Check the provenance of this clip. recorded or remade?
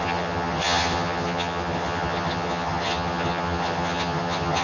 remade